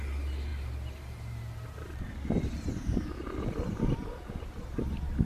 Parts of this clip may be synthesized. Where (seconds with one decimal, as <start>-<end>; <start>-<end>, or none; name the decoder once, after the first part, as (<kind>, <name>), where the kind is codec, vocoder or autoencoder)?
0.5-2.6 (vocoder, BigVGAN v2)